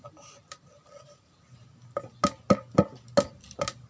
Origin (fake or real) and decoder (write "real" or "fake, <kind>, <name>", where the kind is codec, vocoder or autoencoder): real